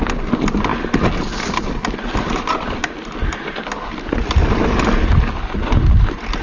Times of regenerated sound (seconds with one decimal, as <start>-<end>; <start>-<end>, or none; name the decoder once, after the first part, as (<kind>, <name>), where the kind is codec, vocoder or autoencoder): none